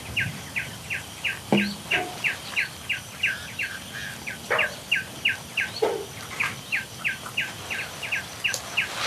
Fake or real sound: real